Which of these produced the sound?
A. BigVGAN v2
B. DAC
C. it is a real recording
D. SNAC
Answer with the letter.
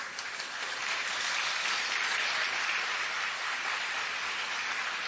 C